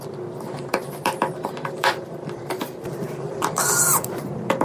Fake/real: fake